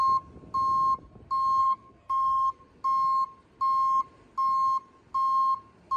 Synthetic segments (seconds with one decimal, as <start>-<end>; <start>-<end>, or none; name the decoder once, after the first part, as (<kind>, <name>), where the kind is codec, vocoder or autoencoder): 1.6-2.6 (codec, SNAC)

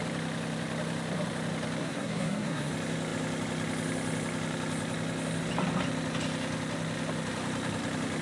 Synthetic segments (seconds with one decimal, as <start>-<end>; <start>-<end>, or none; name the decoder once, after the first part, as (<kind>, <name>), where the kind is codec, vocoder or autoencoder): 1.8-2.7 (codec, SNAC)